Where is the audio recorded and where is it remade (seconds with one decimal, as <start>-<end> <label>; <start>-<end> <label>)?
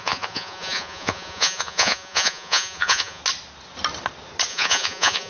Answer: 0.0-3.2 remade; 3.2-4.5 recorded; 4.5-5.3 remade